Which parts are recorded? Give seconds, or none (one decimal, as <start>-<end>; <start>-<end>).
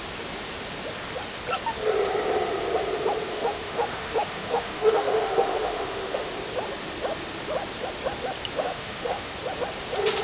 0.0-3.3; 6.3-8.6; 9.3-10.2